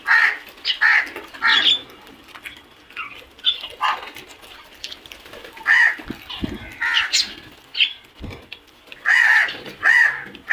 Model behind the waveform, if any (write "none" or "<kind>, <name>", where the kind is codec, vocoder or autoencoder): none